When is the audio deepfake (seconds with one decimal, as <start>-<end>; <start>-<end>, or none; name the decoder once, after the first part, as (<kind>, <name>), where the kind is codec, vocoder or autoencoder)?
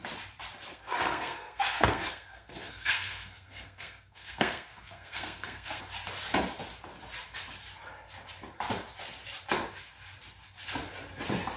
0.7-5.8 (codec, SNAC)